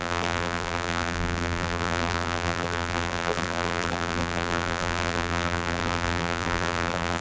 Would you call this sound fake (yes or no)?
yes